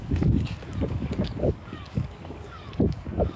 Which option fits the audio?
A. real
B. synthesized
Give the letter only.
B